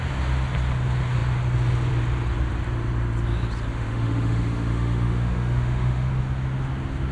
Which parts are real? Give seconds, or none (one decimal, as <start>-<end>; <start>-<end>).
0.0-3.7; 6.1-7.1